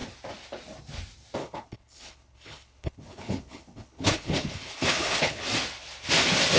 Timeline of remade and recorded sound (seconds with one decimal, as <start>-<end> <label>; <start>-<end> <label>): 0.0-1.4 recorded; 1.4-5.4 remade; 5.4-6.6 recorded